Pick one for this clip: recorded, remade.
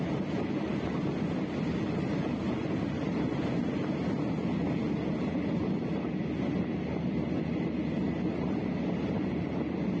recorded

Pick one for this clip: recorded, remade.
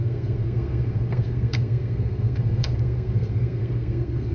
remade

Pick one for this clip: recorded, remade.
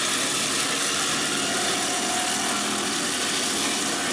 recorded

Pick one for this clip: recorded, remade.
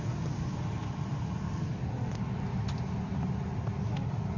recorded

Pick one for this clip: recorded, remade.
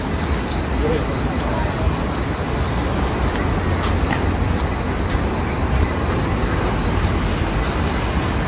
recorded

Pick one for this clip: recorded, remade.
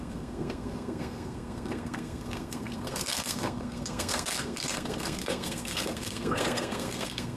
remade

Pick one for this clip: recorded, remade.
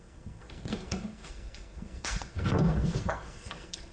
remade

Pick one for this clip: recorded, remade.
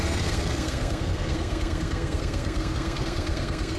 remade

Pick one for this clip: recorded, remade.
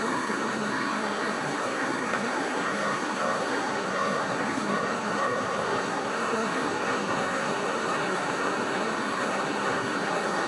remade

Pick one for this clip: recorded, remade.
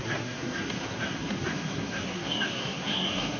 remade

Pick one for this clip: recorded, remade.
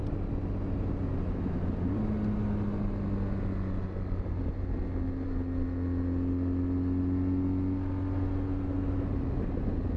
recorded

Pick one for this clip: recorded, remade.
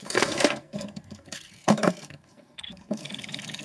remade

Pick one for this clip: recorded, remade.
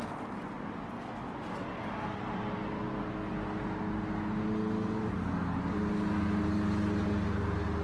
recorded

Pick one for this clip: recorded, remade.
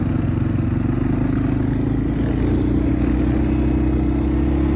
recorded